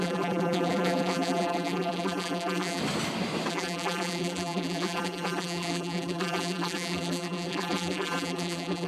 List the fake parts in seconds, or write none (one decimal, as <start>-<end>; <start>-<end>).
0.0-2.8; 3.5-8.9